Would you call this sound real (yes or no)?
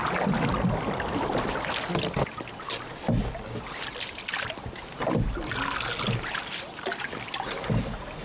yes